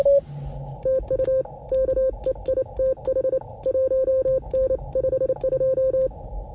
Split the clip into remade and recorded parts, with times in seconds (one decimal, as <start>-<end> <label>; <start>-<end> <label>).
0.0-6.5 recorded